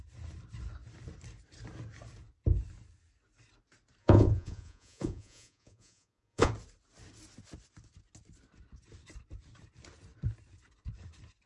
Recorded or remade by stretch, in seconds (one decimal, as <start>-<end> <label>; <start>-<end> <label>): 0.0-4.0 recorded; 4.0-6.5 remade; 6.5-11.5 recorded